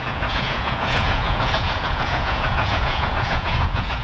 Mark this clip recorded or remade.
remade